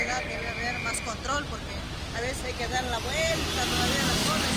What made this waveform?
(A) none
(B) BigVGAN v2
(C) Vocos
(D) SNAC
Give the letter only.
A